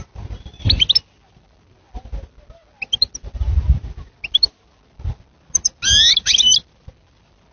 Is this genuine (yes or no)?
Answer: yes